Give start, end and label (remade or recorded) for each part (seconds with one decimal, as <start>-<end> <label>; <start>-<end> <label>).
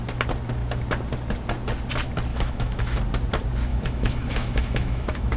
0.0-2.3 recorded; 2.3-3.0 remade; 3.0-3.7 recorded; 3.7-5.4 remade